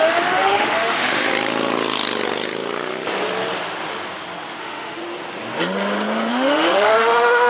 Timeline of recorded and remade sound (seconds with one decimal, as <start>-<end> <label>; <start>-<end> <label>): 0.0-1.3 remade; 1.3-4.6 recorded; 4.6-5.0 remade; 5.0-6.3 recorded; 6.3-7.5 remade